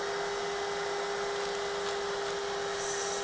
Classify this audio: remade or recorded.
recorded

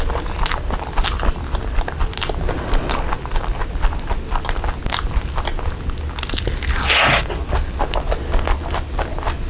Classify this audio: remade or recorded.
recorded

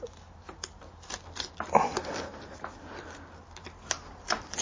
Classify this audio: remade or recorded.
recorded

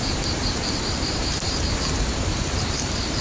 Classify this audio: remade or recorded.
remade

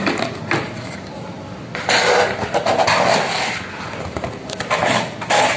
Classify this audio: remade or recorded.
recorded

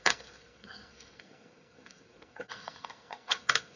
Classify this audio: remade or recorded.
remade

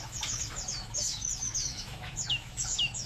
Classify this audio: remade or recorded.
remade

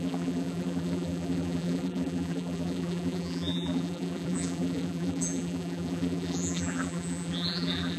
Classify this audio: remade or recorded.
remade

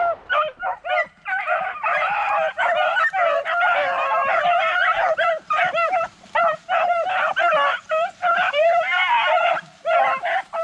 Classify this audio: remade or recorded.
remade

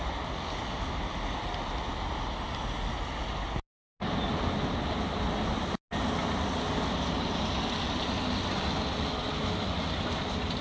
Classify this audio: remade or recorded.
recorded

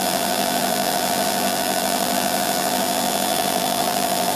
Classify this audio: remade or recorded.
remade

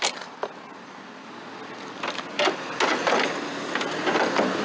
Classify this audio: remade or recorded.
recorded